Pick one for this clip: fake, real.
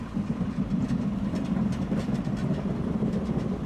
real